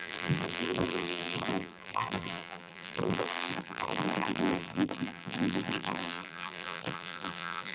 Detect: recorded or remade remade